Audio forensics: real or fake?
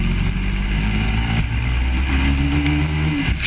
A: real